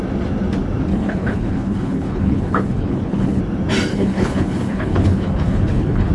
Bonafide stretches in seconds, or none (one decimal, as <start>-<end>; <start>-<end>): 0.0-0.9; 3.4-3.9

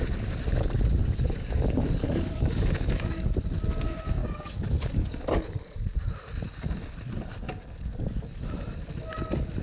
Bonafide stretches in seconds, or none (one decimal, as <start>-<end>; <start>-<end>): 0.0-1.0; 3.3-4.2; 5.4-9.6

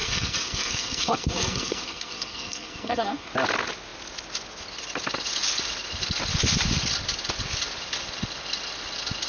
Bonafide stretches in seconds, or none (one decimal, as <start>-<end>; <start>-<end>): 3.3-9.3

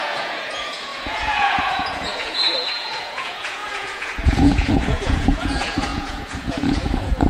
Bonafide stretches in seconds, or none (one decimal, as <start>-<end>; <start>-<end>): none

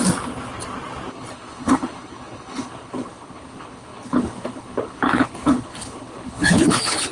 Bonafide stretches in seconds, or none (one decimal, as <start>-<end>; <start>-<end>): 0.0-1.1

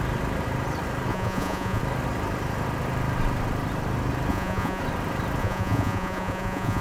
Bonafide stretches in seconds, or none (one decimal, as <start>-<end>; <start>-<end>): 0.0-1.1; 1.8-4.3; 4.8-5.4

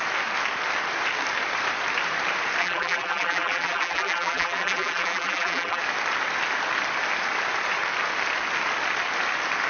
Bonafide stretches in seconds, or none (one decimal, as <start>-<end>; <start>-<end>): 0.0-2.6; 5.8-9.7